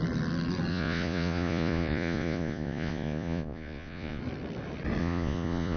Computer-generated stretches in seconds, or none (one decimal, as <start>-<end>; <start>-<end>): 0.7-4.2; 5.0-5.8